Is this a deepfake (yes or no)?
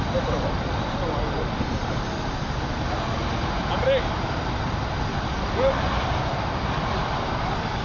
no